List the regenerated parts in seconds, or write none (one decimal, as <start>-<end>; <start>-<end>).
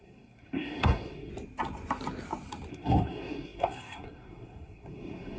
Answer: 0.0-1.3; 2.7-5.4